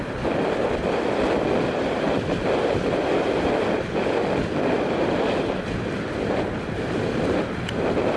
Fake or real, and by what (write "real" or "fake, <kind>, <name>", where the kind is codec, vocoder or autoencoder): real